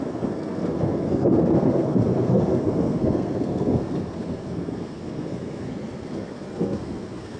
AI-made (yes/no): yes